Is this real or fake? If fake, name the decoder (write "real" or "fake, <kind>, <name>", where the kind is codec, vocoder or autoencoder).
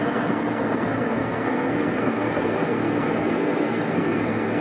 fake, codec, SNAC